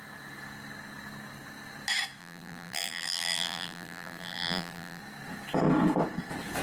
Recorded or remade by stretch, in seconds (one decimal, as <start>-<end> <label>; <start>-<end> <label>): 0.0-2.2 recorded; 2.2-5.0 remade; 5.0-6.6 recorded